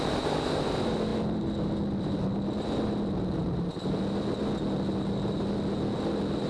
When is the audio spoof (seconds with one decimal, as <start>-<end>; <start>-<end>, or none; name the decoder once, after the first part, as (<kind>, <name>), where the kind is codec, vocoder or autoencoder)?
none